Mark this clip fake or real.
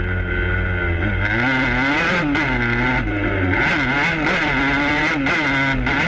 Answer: real